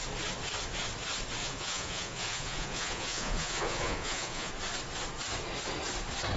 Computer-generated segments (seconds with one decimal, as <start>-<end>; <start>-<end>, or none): 1.4-4.5